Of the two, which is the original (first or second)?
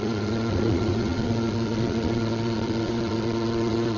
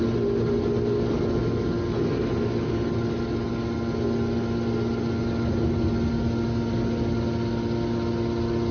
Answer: second